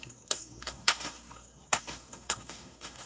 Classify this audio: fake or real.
fake